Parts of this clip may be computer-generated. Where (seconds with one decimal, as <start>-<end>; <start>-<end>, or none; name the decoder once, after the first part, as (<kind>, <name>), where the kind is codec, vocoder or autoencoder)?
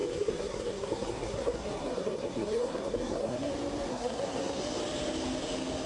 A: 0.0-3.5 (codec, SNAC); 3.9-4.6